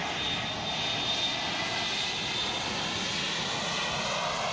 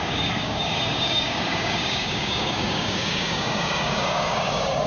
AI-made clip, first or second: second